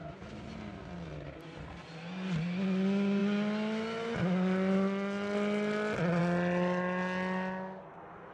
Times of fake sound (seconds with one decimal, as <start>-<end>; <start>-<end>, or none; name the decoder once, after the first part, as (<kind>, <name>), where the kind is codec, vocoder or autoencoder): none